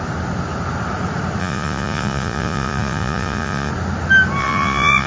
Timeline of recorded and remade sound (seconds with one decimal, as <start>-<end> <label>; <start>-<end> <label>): 0.0-1.4 recorded; 1.4-3.7 remade; 3.7-4.4 recorded; 4.4-5.1 remade